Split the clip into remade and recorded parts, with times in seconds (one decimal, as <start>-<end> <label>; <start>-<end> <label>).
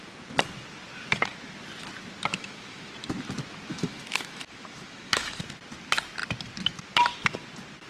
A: 0.0-2.3 recorded; 2.3-2.9 remade; 2.9-3.7 recorded; 3.7-5.4 remade; 5.4-7.9 recorded